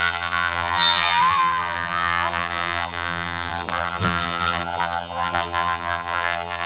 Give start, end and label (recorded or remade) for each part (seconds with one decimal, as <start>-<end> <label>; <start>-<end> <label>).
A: 0.0-6.7 remade